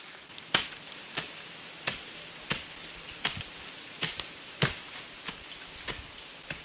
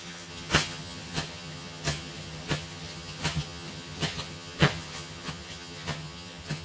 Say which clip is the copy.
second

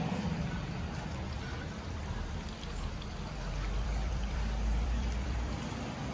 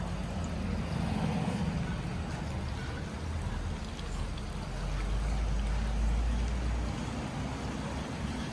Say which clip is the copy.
first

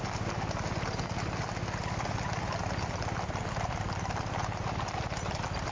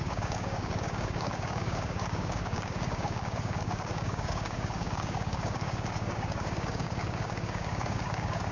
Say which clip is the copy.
second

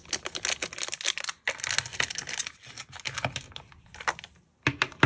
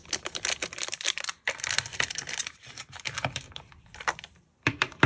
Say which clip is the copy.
second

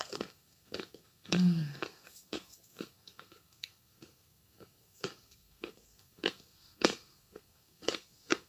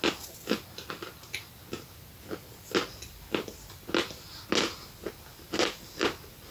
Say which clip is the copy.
first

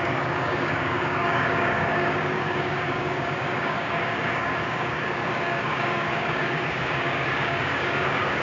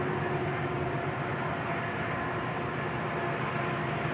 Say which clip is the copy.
first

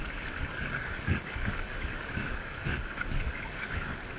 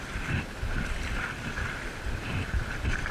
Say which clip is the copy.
first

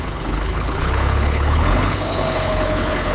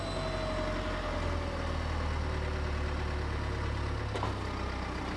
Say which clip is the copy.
first